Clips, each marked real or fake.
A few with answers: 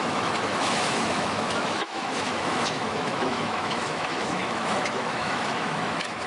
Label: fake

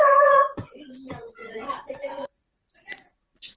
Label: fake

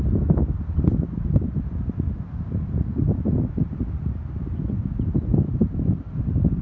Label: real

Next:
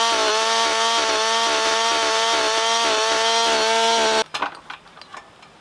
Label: real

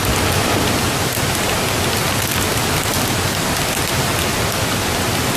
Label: real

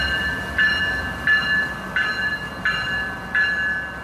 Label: real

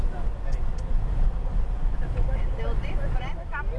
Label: real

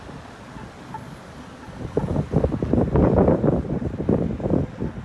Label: real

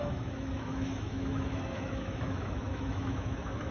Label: fake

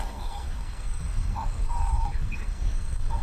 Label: fake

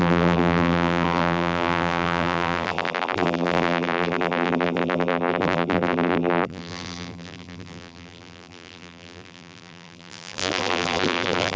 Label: fake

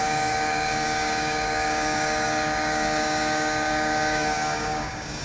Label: fake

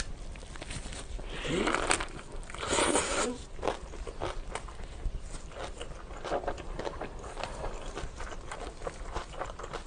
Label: real